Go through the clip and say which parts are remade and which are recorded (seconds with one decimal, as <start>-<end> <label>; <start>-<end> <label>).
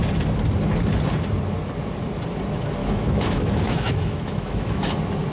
0.0-2.8 recorded; 2.8-4.8 remade; 4.8-5.3 recorded